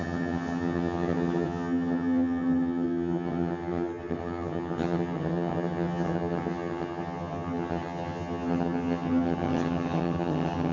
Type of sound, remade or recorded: remade